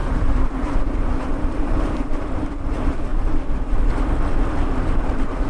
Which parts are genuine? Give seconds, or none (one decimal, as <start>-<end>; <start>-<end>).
3.1-4.8